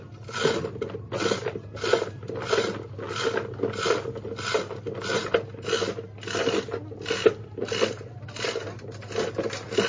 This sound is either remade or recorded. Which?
recorded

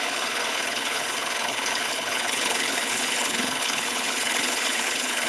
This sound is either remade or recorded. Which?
remade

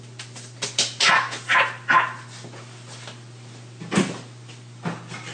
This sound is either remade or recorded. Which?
recorded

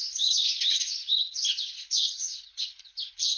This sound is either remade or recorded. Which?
remade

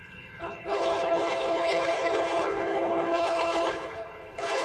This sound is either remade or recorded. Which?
remade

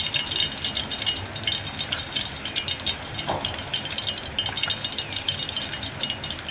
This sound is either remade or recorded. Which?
recorded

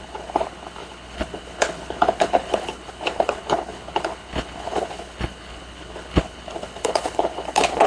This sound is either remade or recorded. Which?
remade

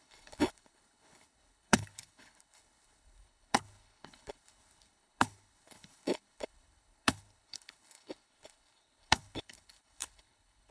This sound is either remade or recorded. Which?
remade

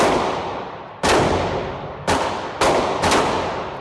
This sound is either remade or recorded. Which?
recorded